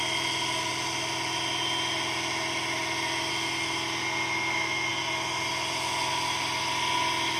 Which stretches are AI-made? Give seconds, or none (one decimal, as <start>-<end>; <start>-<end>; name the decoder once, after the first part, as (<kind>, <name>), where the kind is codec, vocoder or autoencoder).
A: none